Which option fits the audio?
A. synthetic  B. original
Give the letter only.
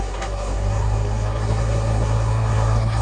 A